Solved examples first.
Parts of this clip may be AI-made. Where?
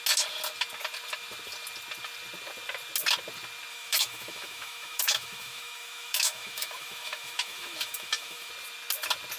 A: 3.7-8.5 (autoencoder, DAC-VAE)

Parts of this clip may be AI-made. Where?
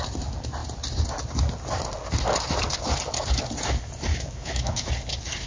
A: 4.1-4.9 (autoencoder, DAC-VAE)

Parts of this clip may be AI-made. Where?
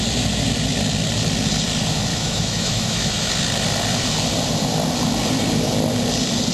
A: 2.1-3.3 (autoencoder, DAC-VAE)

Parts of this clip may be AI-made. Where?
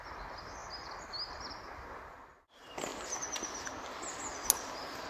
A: none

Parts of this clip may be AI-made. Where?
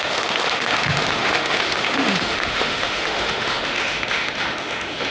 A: 0.0-5.1 (autoencoder, DAC-VAE)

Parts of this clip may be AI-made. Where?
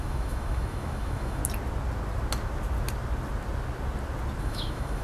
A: 0.0-1.4 (autoencoder, DAC-VAE); 4.4-5.0